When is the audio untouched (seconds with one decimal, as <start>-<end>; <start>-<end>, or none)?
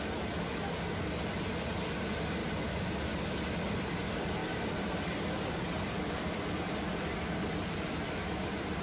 0.0-2.4; 3.1-4.4; 6.5-8.8